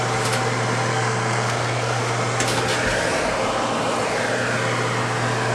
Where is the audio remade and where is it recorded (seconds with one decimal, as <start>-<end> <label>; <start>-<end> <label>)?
0.0-0.9 recorded; 0.9-2.0 remade; 2.0-5.5 recorded